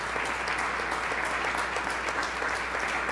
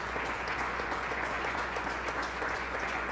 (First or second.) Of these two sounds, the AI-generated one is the second